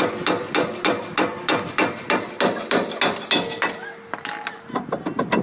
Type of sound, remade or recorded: recorded